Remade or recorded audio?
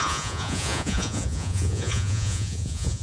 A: remade